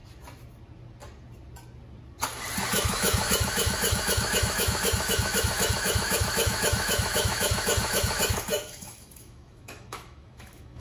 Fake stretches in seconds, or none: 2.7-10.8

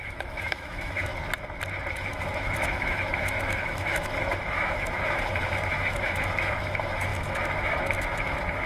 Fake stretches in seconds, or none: 0.0-1.1; 1.9-8.7

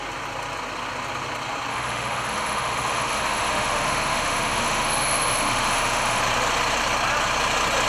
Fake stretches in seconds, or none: 1.7-6.2